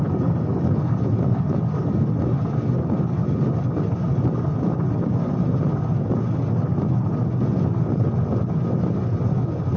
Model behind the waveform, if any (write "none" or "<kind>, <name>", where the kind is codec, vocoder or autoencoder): none